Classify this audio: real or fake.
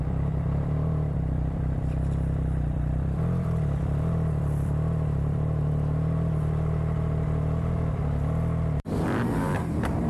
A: fake